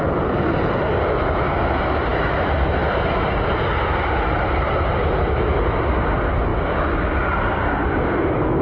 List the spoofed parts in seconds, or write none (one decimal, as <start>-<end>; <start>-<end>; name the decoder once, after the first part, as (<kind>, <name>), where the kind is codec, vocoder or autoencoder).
2.1-2.9 (autoencoder, DAC-VAE)